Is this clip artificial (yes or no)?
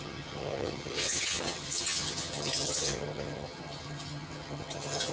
yes